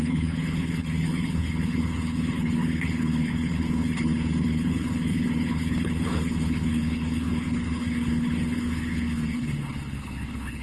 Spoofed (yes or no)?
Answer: yes